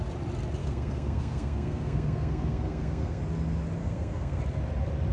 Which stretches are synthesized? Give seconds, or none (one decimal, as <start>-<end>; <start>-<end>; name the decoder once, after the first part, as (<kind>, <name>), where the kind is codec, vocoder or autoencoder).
0.6-3.2 (codec, SNAC); 3.8-4.4

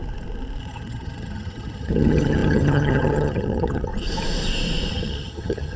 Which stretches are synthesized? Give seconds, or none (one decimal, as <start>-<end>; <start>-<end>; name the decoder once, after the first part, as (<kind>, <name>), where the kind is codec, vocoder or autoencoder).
0.6-3.9 (vocoder, HiFi-GAN); 4.9-5.8

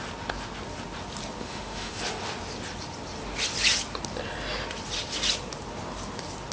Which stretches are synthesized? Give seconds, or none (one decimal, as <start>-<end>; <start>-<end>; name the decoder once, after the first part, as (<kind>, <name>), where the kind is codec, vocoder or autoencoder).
1.4-2.0 (autoencoder, DAC-VAE)

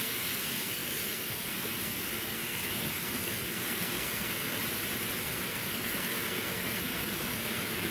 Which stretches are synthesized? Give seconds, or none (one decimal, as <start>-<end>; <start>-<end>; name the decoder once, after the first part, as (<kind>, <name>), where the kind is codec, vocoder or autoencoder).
0.0-4.6 (codec, SNAC); 5.2-7.9

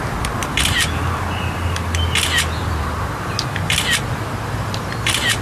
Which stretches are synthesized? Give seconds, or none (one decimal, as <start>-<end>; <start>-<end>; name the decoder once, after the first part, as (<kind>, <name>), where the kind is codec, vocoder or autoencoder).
none

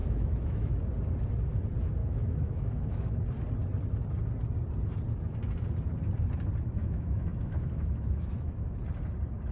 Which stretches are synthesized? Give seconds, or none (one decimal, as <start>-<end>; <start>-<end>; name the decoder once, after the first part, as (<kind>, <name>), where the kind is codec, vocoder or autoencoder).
0.0-0.7 (autoencoder, DAC-VAE); 2.0-3.2; 6.8-8.7